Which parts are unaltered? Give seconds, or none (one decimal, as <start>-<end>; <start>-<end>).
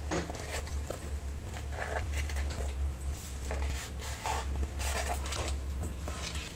0.0-6.6